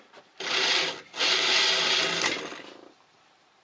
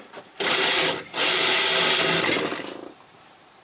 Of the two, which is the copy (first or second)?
second